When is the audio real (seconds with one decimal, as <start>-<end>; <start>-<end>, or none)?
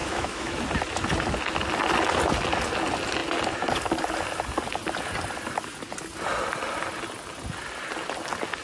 0.6-8.6